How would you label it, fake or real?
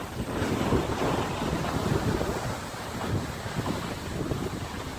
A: real